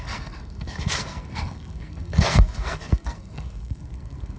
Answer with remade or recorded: remade